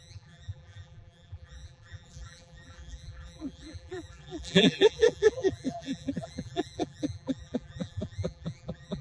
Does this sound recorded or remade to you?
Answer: remade